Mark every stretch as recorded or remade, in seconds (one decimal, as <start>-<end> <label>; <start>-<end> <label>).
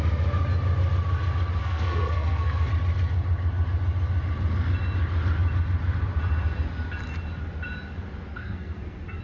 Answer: 0.0-1.6 recorded; 1.6-2.7 remade; 2.7-8.3 recorded; 8.3-9.2 remade